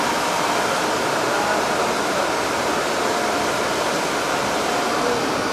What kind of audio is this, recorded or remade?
recorded